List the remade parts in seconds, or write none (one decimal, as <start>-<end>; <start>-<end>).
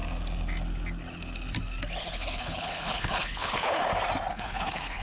2.0-3.8; 4.3-5.0